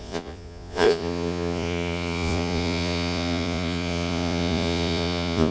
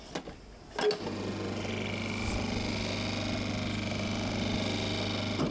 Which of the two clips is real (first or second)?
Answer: second